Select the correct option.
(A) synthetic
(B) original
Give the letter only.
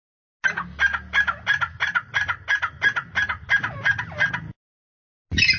B